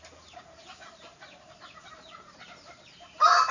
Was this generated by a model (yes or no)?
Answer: yes